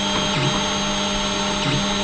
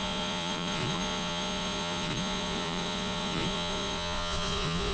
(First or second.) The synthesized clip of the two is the second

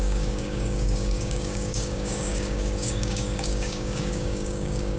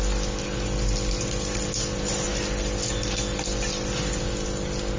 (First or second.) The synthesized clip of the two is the first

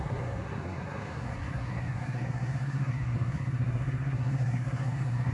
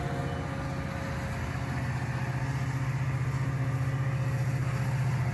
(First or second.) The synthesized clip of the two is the first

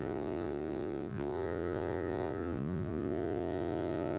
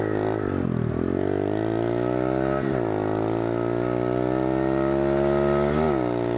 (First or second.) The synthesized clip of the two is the first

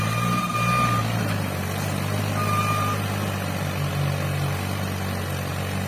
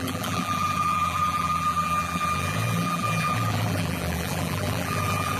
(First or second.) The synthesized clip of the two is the second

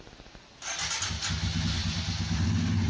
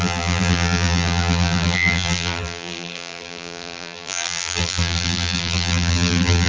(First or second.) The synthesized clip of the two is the second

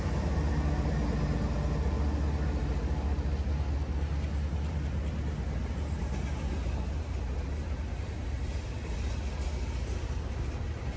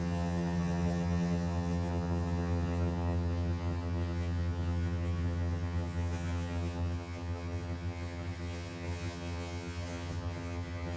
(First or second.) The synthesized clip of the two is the second